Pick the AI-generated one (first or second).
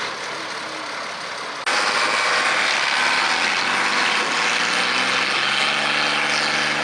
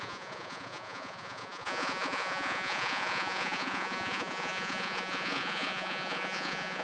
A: second